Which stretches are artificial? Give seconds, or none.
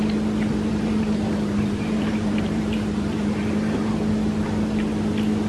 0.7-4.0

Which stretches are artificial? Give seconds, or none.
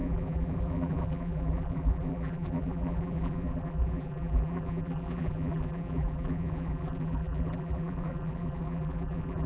0.0-9.5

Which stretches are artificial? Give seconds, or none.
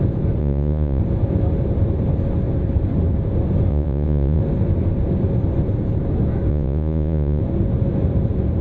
0.4-1.0; 3.7-4.4; 6.5-7.4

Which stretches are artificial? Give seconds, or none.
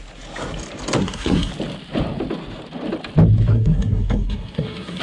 1.0-1.5; 3.5-5.0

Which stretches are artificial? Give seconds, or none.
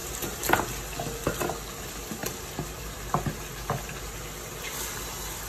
none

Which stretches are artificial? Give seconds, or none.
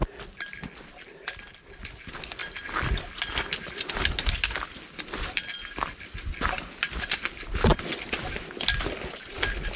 none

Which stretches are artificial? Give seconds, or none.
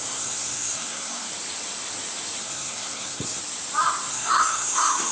0.0-1.3; 2.4-3.4; 4.1-5.1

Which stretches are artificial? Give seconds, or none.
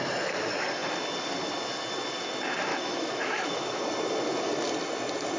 2.7-3.8